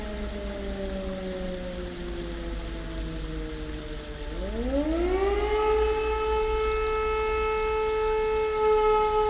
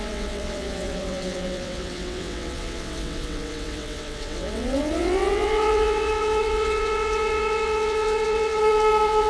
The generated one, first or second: second